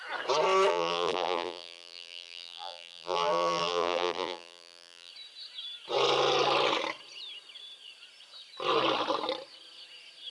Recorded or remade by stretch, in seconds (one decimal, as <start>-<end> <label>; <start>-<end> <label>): 0.0-0.7 recorded; 0.7-5.1 remade; 5.1-10.3 recorded